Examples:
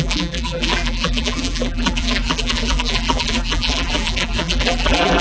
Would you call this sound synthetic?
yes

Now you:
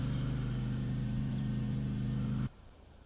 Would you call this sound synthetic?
yes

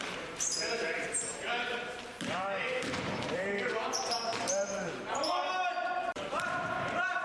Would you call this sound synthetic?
yes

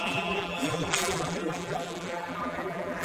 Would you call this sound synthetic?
yes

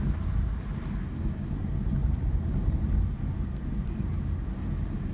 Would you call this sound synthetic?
no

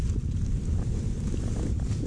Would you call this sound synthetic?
no